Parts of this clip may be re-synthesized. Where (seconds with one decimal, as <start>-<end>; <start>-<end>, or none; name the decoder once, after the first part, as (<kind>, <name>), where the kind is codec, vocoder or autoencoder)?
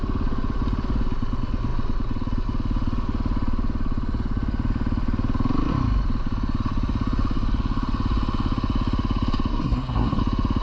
9.5-10.2 (codec, SNAC)